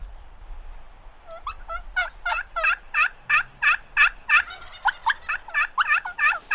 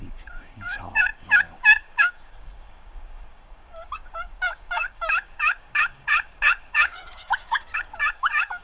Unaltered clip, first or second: first